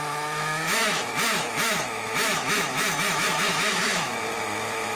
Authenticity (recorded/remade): remade